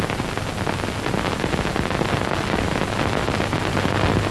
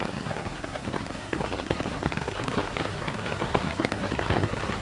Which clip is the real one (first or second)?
first